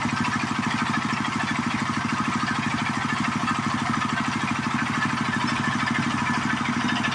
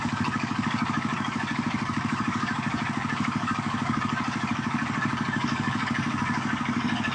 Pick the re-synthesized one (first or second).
second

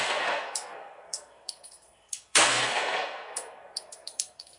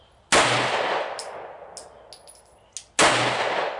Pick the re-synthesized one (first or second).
first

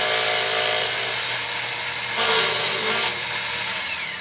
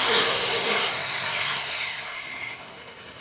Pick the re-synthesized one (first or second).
second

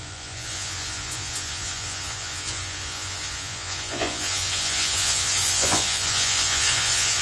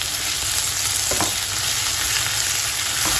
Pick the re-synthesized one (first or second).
first